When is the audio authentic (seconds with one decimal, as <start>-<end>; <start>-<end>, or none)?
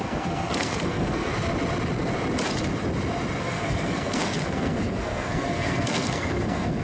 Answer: 1.3-3.4